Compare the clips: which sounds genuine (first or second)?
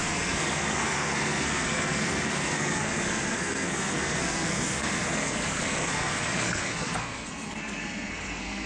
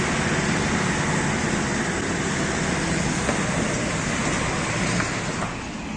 second